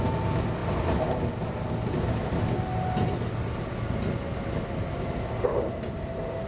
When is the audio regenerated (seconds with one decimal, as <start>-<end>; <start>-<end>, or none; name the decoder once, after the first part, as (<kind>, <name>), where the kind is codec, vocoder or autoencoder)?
none